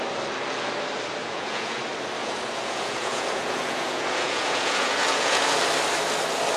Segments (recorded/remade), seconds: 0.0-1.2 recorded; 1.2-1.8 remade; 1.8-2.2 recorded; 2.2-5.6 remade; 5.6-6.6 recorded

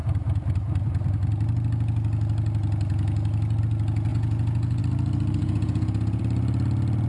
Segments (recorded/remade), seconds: 0.0-4.1 recorded; 4.1-4.8 remade; 4.8-5.4 recorded; 5.4-6.2 remade; 6.2-7.1 recorded

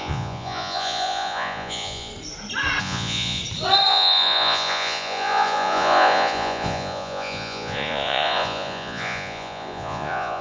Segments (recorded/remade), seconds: 0.0-2.1 remade; 2.1-2.8 recorded; 2.8-3.4 remade; 3.4-3.9 recorded; 3.9-10.4 remade

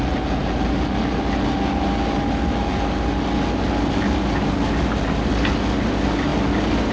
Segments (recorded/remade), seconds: 0.0-6.9 recorded